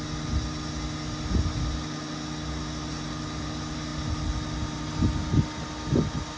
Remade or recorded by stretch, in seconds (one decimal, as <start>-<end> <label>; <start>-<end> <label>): 0.0-6.4 recorded